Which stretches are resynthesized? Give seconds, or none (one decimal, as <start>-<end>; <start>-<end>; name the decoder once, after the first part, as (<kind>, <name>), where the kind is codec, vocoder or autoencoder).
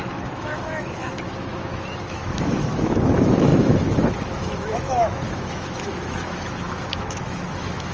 0.0-7.9 (autoencoder, DAC-VAE)